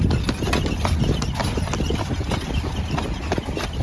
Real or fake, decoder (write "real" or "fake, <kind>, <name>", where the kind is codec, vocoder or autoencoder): real